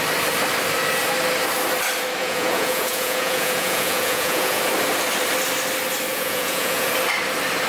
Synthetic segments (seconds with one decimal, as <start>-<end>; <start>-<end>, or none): 2.2-4.6; 6.1-6.9